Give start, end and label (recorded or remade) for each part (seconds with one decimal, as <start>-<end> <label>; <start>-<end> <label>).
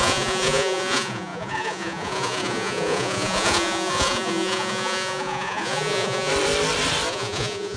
0.0-6.3 remade; 6.3-7.1 recorded; 7.1-7.8 remade